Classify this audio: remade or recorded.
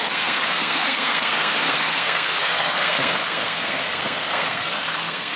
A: remade